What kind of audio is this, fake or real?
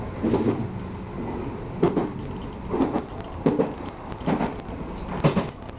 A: real